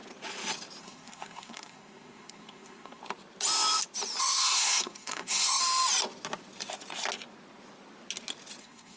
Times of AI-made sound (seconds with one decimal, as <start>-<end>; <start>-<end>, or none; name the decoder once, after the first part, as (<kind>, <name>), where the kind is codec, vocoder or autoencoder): 0.8-3.0 (codec, SNAC); 4.2-5.6; 8.6-9.0